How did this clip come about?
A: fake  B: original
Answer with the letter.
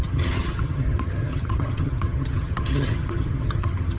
A